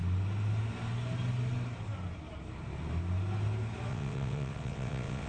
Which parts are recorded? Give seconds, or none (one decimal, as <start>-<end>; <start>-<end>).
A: 0.0-3.9